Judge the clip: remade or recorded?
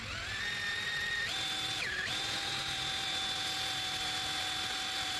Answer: recorded